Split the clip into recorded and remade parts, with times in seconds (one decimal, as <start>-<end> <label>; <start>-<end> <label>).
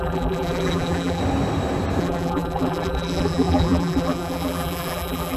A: 0.0-1.2 remade; 1.2-2.0 recorded; 2.0-5.4 remade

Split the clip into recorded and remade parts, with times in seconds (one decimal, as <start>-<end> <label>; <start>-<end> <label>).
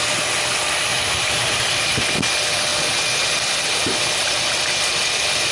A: 0.0-0.9 recorded; 0.9-2.0 remade; 2.0-5.5 recorded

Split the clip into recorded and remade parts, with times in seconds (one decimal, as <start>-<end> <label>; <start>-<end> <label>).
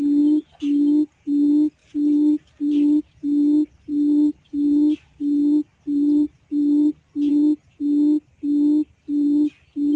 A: 0.0-1.8 recorded; 1.8-3.0 remade; 3.0-3.9 recorded; 3.9-4.5 remade; 4.5-5.7 recorded; 5.7-7.3 remade; 7.3-10.0 recorded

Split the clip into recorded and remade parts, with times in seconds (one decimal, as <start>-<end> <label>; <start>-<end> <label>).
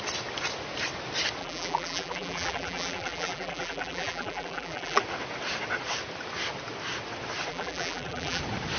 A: 0.0-1.4 recorded; 1.4-5.0 remade; 5.0-7.5 recorded; 7.5-8.4 remade; 8.4-8.8 recorded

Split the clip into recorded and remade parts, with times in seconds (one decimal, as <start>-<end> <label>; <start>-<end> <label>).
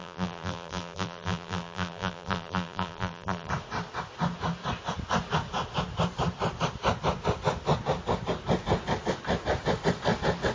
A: 0.0-3.5 remade; 3.5-10.5 recorded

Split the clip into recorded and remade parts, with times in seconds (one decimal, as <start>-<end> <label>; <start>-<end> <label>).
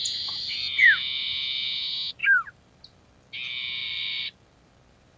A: 0.0-2.2 recorded; 2.2-3.1 remade; 3.1-3.8 recorded; 3.8-5.2 remade